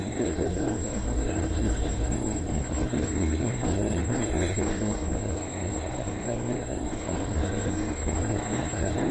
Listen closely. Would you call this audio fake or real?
fake